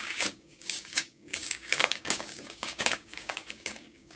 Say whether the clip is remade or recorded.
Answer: remade